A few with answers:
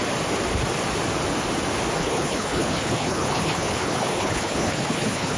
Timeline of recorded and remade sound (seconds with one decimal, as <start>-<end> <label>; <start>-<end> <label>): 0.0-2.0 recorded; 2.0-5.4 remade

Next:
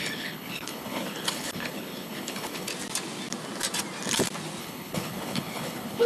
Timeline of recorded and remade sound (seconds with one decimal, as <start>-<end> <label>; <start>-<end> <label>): 0.0-2.7 remade; 2.7-4.6 recorded; 4.6-6.1 remade

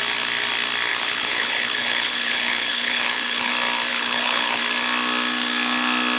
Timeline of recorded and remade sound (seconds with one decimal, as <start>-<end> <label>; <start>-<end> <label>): 0.0-0.9 recorded; 0.9-3.5 remade; 3.5-3.9 recorded; 3.9-4.6 remade; 4.6-6.2 recorded

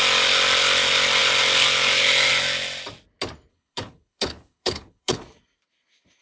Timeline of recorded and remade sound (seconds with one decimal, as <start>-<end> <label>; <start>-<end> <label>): 0.0-3.5 recorded; 3.5-5.2 remade; 5.2-6.2 recorded